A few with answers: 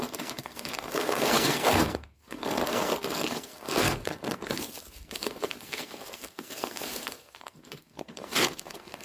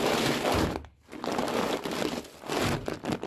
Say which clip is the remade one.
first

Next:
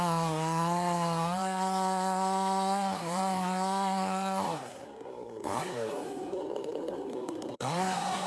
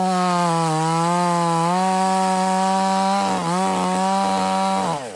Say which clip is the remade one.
first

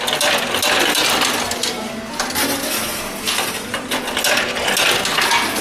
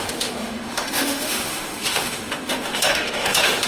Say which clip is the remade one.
second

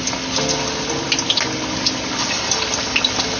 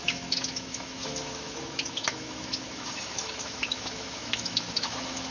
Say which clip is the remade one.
second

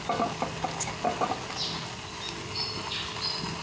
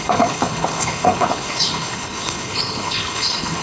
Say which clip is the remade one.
second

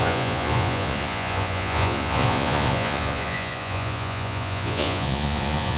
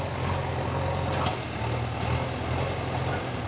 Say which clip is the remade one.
first